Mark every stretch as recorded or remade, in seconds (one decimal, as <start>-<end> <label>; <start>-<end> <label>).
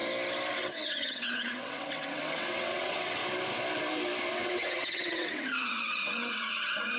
0.0-0.5 recorded; 0.5-3.2 remade; 3.2-4.3 recorded; 4.3-7.0 remade